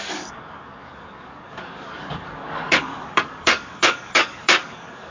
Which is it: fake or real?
fake